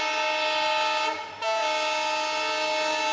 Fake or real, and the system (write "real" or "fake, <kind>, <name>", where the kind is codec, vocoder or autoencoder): real